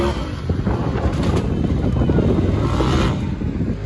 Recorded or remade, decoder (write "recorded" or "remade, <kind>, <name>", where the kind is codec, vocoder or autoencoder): recorded